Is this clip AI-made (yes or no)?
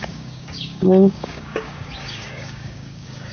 yes